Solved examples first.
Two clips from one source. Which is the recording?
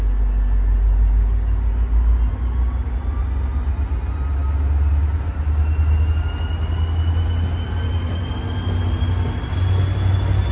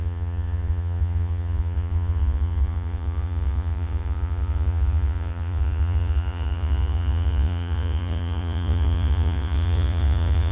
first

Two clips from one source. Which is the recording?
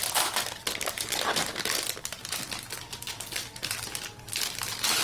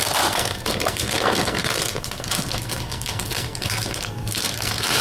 first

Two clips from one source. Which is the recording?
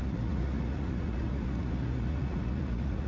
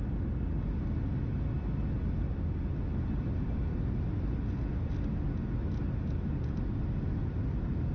second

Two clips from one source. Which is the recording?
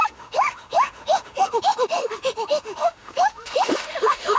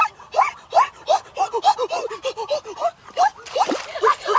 second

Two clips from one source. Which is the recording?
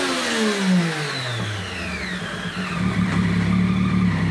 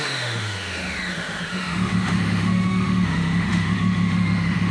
first